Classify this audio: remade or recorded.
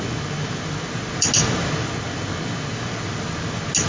recorded